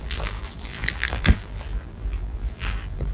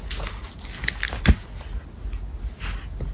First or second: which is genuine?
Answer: second